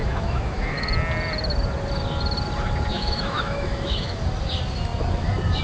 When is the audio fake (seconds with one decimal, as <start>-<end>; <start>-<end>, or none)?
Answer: 0.0-0.9; 2.9-4.2